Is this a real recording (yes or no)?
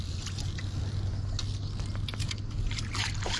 yes